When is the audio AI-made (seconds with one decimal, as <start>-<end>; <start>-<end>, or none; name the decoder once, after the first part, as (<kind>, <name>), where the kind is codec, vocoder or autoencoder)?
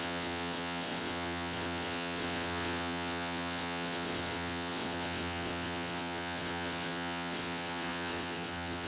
0.0-8.9 (vocoder, WaveNeXt)